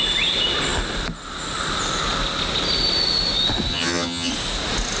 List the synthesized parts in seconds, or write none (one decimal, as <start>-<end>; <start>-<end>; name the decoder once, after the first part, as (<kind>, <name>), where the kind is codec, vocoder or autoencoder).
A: 3.7-4.3 (vocoder, HiFi-GAN)